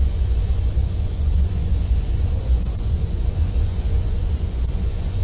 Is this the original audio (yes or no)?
no